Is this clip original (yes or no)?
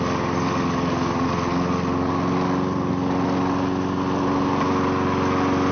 yes